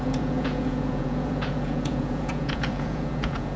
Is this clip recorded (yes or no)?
no